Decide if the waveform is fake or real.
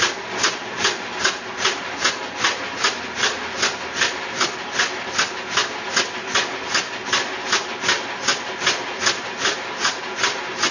real